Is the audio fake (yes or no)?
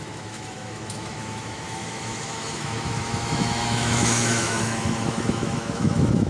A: yes